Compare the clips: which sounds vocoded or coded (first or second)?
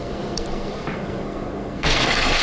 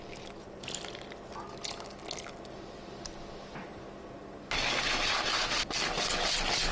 first